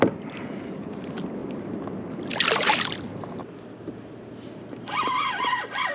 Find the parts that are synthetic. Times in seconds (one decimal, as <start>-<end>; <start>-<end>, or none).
none